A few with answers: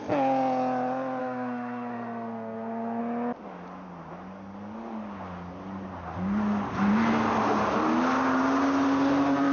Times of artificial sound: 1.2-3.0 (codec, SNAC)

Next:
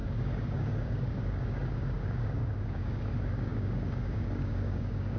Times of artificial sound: 0.0-5.2 (codec, DAC)

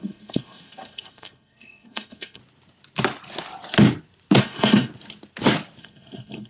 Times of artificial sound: 0.0-2.4 (codec, SNAC); 4.4-4.9; 5.8-6.5

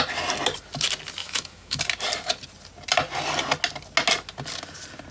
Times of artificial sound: 1.2-1.8 (autoencoder, DAC-VAE)

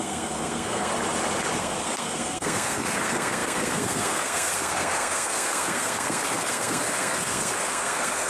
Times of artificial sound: 0.0-0.9 (codec, SNAC); 1.6-8.3